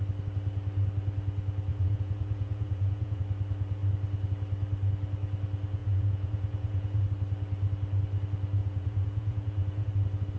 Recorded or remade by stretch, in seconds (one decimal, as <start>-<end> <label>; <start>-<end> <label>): 0.0-1.7 recorded; 1.7-3.2 remade; 3.2-5.8 recorded; 5.8-7.0 remade; 7.0-8.6 recorded; 8.6-9.9 remade; 9.9-10.4 recorded